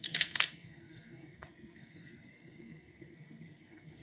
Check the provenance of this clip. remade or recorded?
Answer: remade